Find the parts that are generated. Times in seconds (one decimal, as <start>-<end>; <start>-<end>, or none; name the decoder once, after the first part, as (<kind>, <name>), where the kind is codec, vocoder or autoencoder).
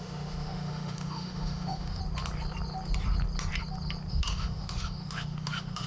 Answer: 0.0-2.0 (autoencoder, DAC-VAE); 4.1-5.9